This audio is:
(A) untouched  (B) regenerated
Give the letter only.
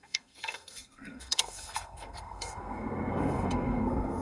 B